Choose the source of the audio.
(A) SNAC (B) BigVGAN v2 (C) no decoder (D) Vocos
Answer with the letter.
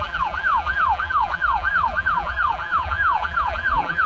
B